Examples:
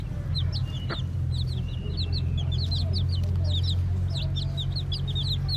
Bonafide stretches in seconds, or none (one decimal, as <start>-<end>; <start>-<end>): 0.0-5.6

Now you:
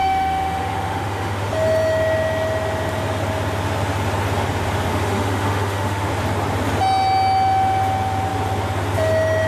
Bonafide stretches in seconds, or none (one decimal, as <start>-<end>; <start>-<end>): 1.5-4.9; 6.1-9.5

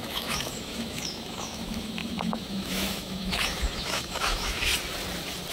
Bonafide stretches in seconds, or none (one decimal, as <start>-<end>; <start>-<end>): 4.7-5.5

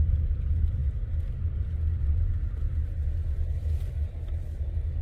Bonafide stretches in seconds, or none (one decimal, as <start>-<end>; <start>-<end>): 0.0-5.0